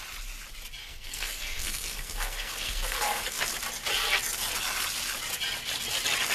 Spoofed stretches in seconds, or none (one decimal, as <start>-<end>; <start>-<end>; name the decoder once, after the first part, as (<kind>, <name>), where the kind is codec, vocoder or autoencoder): 0.8-3.4 (codec, SNAC)